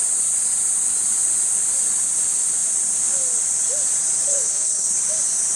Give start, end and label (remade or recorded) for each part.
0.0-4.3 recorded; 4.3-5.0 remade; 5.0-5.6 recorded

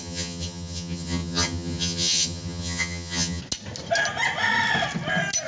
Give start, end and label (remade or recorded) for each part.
0.0-3.4 remade; 3.4-5.5 recorded

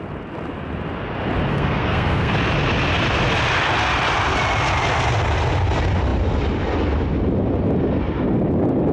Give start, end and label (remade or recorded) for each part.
0.0-1.5 recorded; 1.5-2.3 remade; 2.3-8.9 recorded

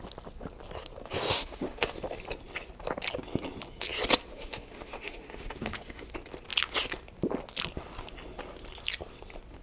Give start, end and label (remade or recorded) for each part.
0.0-1.0 recorded; 1.0-2.0 remade; 2.0-4.3 recorded; 4.3-6.1 remade; 6.1-9.6 recorded

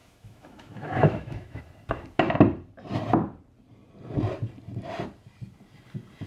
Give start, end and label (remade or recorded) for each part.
0.0-1.6 remade; 1.6-6.3 recorded

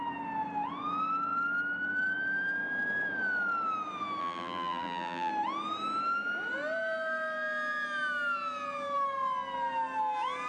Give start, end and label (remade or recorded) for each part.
0.0-4.2 recorded; 4.2-5.3 remade; 5.3-10.5 recorded